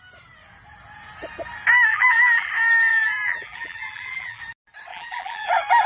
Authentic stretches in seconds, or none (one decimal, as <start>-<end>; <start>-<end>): 0.0-1.9; 2.5-2.9; 4.4-4.9; 5.5-5.9